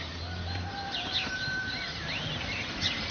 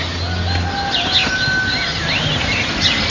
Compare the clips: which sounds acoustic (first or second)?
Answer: second